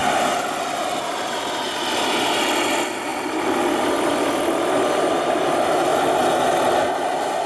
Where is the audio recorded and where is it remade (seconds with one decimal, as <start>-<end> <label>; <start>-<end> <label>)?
0.0-1.9 recorded; 1.9-3.1 remade; 3.1-5.2 recorded; 5.2-5.9 remade; 5.9-7.5 recorded